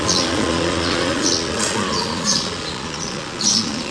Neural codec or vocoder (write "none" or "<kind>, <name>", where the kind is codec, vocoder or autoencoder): vocoder, Vocos